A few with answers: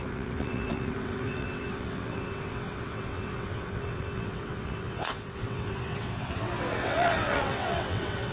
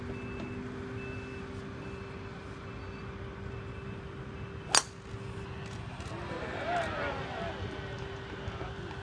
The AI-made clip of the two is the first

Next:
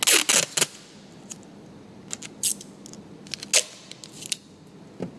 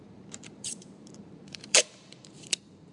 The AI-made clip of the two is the second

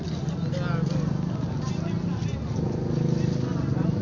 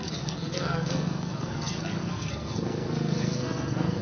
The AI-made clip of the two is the second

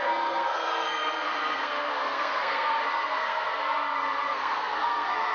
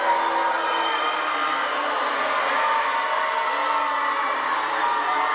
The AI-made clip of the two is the first